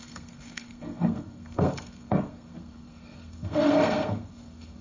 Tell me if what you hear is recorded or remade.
remade